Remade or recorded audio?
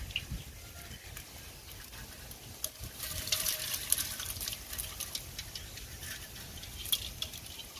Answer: recorded